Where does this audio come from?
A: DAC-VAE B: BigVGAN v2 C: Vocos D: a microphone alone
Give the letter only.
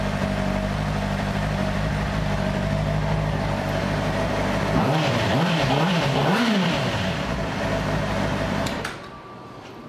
B